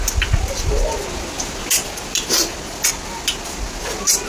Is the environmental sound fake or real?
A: real